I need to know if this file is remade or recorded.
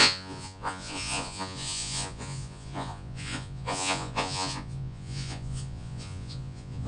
remade